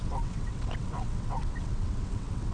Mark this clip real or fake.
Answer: fake